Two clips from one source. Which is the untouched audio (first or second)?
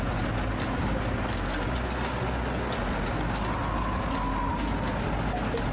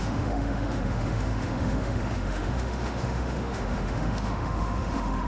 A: first